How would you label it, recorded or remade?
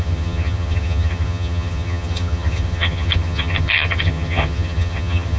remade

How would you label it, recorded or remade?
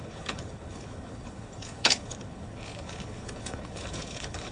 remade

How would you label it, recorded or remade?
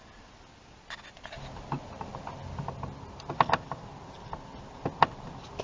recorded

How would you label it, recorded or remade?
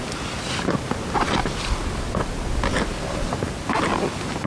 recorded